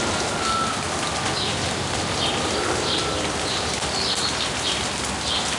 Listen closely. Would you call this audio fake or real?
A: real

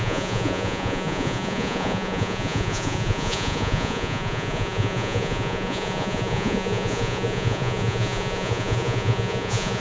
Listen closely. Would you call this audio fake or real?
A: fake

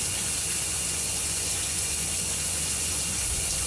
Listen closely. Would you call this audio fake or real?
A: fake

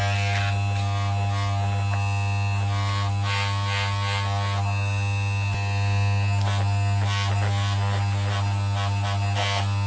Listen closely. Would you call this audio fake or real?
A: real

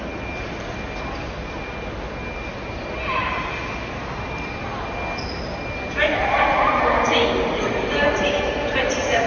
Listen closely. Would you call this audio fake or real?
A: real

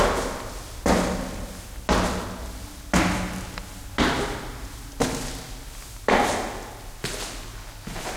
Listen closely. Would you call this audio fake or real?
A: real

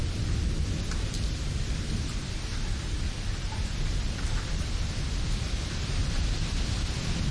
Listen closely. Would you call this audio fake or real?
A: real